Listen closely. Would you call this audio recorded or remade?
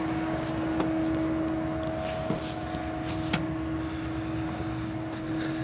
recorded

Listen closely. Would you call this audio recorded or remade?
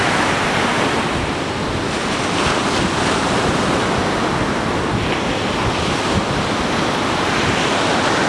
recorded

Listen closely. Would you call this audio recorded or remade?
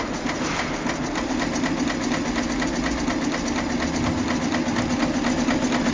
recorded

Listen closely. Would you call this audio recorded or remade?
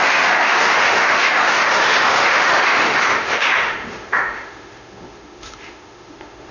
remade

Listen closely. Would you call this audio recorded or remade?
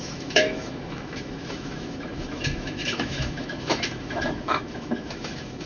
remade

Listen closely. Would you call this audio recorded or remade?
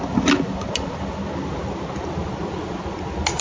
recorded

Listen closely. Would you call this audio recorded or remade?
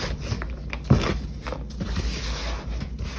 recorded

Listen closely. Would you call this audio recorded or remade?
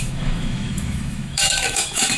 remade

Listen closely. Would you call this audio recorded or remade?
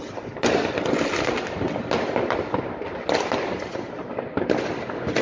recorded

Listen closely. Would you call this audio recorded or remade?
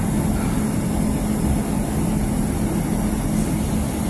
recorded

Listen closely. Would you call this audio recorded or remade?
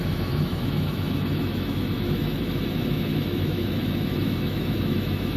remade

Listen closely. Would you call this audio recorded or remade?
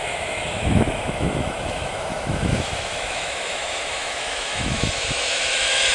remade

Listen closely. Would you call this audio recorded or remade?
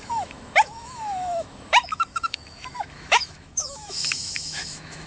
remade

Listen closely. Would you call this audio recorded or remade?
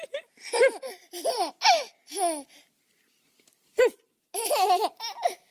recorded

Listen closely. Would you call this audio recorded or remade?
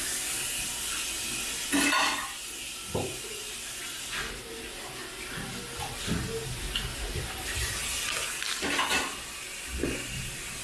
recorded